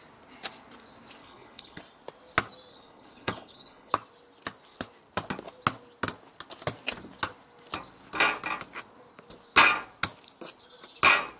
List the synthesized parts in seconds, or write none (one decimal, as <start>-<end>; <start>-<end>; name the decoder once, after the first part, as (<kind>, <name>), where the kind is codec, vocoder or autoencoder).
1.2-1.8 (codec, HILCodec); 2.7-3.9